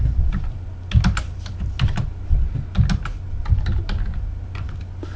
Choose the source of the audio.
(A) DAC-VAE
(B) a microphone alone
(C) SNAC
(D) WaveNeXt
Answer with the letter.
B